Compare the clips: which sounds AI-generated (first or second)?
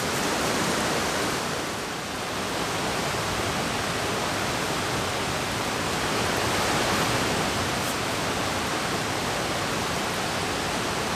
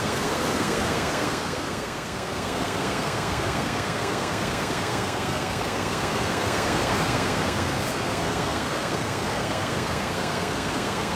second